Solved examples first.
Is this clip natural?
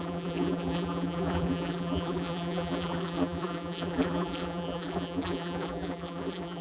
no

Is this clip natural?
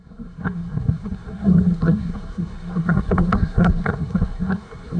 no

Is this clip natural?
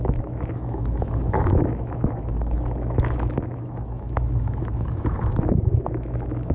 no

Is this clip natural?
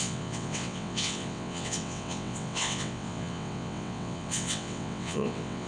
no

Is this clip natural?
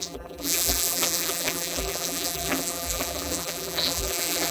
no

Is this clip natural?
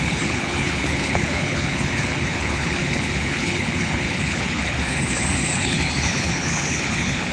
no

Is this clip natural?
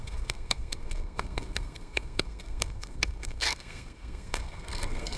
no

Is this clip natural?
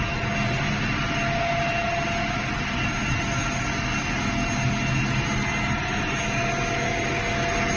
yes